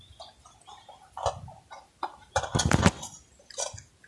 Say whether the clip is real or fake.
real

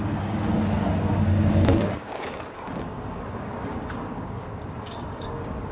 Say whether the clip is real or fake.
fake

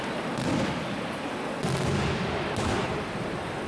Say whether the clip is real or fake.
real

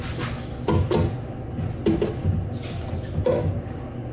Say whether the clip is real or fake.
real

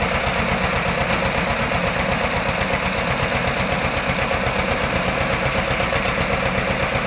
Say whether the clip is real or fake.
real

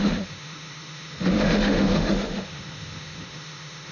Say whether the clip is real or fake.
fake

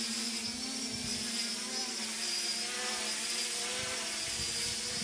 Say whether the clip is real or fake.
real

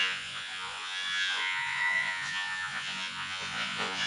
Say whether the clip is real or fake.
fake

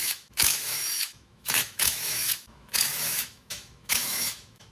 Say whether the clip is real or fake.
fake